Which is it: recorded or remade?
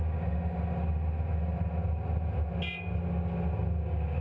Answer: recorded